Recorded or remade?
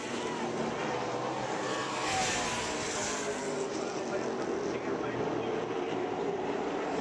recorded